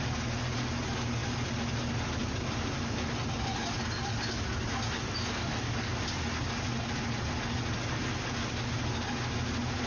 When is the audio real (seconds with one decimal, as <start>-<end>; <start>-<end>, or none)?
0.0-9.9